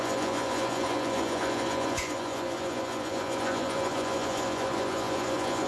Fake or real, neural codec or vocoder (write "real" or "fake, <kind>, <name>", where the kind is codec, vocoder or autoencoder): fake, vocoder, Vocos